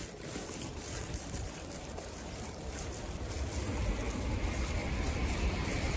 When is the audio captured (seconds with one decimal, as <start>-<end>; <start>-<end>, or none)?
3.6-4.8